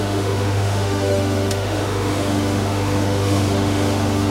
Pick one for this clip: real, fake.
fake